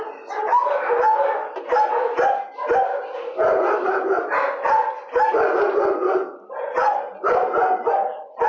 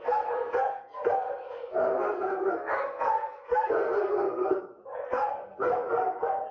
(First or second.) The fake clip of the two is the second